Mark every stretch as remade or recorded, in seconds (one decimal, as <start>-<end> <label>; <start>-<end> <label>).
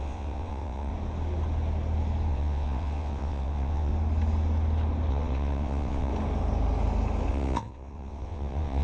0.0-0.9 remade; 0.9-2.3 recorded; 2.3-3.9 remade; 3.9-5.1 recorded; 5.1-6.1 remade; 6.1-7.3 recorded; 7.3-8.8 remade